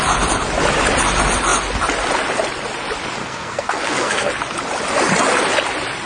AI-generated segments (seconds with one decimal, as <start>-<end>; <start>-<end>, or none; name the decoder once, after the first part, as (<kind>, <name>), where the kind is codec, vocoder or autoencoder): 3.2-4.3 (codec, SNAC)